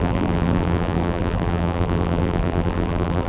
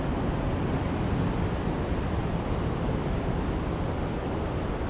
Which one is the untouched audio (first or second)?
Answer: second